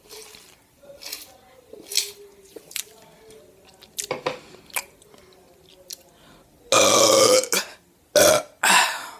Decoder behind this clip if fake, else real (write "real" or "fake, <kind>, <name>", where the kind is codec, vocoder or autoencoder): real